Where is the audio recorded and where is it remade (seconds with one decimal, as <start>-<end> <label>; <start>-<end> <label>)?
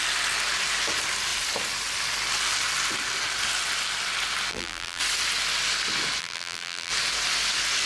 0.0-4.5 recorded; 4.5-5.0 remade; 5.0-6.2 recorded; 6.2-6.9 remade; 6.9-7.9 recorded